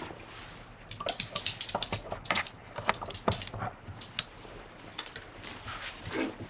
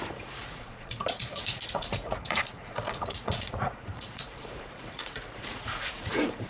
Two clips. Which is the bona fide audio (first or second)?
first